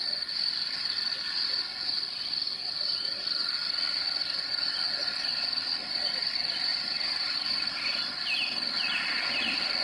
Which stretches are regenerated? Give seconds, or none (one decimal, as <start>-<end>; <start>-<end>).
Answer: 6.7-8.0